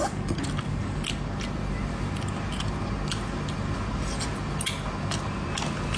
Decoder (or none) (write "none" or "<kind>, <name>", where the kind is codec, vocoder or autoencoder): none